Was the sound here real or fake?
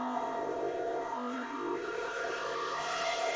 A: fake